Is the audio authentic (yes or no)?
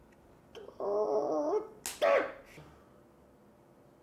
yes